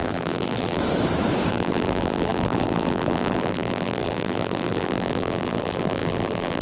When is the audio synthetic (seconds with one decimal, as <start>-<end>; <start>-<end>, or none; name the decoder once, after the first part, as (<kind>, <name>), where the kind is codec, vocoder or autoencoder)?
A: 0.0-0.8 (vocoder, BigVGAN v2); 1.5-6.6